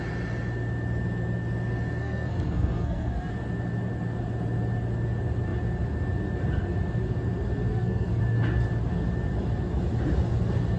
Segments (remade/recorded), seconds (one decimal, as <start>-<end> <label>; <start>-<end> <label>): 0.0-2.0 recorded; 2.0-3.3 remade; 3.3-7.7 recorded; 7.7-8.2 remade; 8.2-10.8 recorded